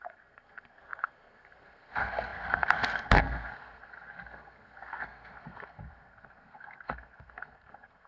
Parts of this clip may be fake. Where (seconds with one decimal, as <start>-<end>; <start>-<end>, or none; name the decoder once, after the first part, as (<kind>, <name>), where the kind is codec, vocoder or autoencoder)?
0.0-8.1 (codec, SNAC)